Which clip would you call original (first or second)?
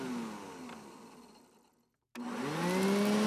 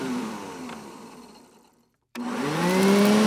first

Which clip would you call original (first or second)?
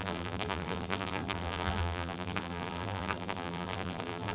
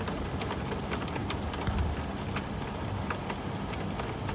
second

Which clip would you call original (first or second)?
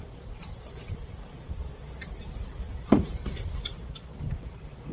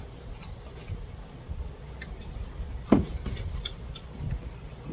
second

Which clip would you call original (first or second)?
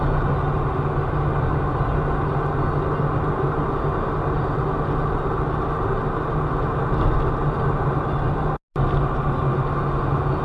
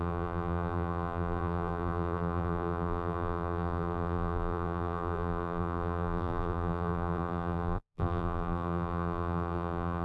first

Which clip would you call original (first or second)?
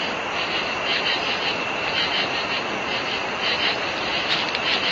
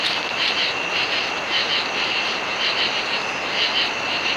second